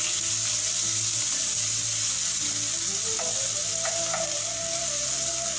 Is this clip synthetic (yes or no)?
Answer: no